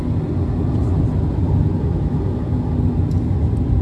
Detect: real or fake real